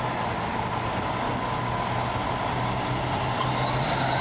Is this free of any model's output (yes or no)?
yes